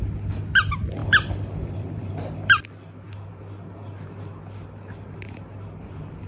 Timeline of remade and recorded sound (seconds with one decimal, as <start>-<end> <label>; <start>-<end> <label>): 0.0-1.0 recorded; 1.0-2.1 remade; 2.1-6.3 recorded